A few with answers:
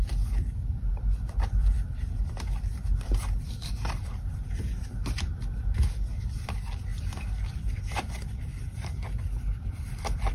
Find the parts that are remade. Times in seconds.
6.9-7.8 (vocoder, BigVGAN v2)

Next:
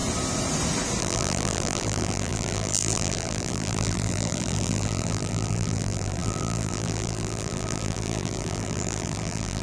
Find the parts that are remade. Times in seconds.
1.0-9.6 (vocoder, BigVGAN v2)

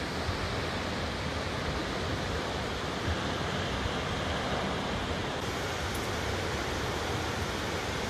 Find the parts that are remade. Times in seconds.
1.8-3.2 (vocoder, BigVGAN v2)